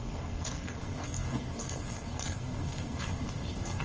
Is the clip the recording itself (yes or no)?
no